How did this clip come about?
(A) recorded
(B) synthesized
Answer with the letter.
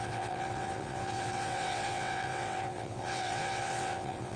B